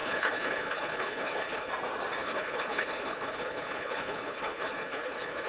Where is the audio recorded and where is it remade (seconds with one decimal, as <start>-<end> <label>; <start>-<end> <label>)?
0.0-1.7 remade; 1.7-2.2 recorded; 2.2-5.5 remade